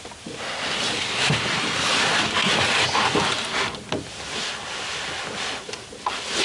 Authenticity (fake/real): real